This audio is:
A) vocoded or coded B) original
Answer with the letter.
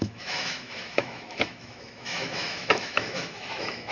A